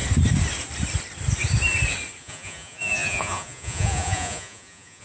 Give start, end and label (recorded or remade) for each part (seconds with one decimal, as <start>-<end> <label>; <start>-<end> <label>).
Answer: 0.0-2.2 recorded; 2.2-5.0 remade